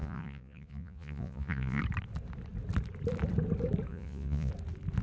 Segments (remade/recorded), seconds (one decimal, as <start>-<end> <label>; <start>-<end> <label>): 0.0-1.8 remade; 1.8-3.9 recorded; 3.9-4.5 remade; 4.5-5.0 recorded